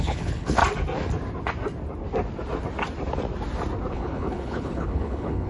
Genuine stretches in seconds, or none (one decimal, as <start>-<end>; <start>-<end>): 0.6-3.9

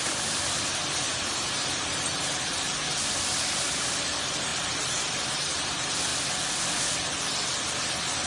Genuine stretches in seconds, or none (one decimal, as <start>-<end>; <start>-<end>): 0.0-8.3